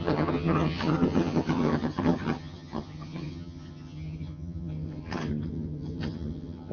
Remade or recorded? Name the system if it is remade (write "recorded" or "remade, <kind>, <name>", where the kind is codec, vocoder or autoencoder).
remade, vocoder, HiFi-GAN